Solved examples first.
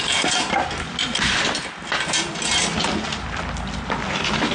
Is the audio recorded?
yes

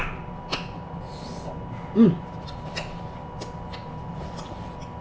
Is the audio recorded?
yes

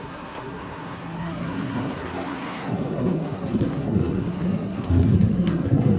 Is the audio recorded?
no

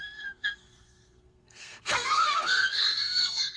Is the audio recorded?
no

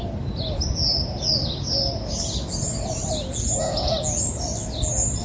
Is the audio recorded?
yes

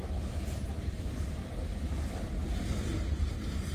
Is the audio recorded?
yes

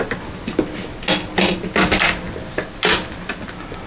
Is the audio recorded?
yes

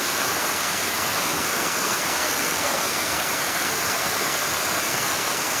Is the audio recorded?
no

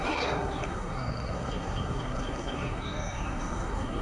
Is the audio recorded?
no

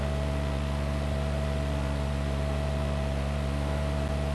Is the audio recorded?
yes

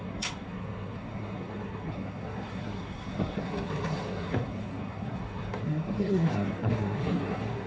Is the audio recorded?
no